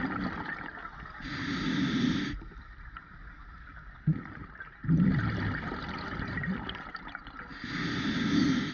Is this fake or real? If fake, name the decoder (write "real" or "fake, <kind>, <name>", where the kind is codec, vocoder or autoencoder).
real